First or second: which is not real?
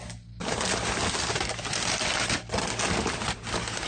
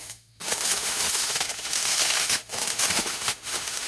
second